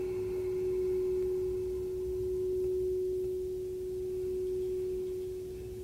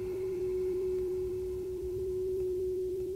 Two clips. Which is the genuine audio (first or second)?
first